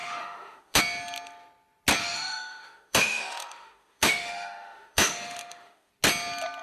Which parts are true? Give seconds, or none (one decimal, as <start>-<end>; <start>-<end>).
0.8-2.0; 5.9-6.6